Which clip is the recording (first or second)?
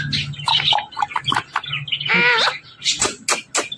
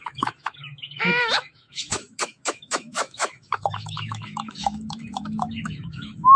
first